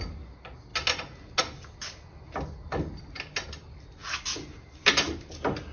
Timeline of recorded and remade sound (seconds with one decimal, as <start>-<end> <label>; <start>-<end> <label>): 0.0-5.7 recorded